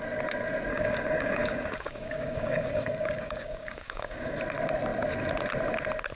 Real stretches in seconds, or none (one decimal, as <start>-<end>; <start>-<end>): 0.0-0.7; 4.4-6.1